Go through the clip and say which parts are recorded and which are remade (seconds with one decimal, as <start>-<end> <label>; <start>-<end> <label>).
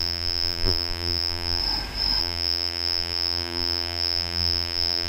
0.0-1.6 remade; 1.6-2.2 recorded; 2.2-5.1 remade